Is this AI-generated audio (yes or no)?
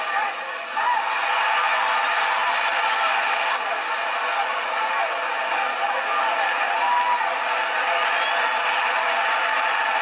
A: no